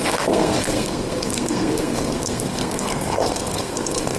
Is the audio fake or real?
fake